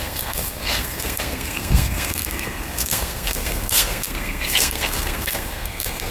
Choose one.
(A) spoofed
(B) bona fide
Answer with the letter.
A